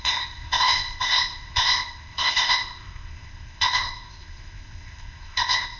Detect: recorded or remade remade